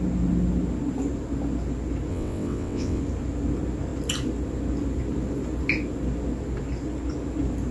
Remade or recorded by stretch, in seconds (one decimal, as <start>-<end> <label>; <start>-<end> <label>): 0.0-2.1 recorded; 2.1-3.0 remade; 3.0-7.7 recorded